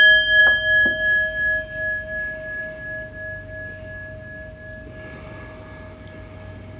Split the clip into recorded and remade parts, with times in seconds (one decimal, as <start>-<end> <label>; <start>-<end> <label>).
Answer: 0.0-6.8 recorded